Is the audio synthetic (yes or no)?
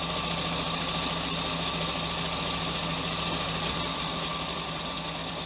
no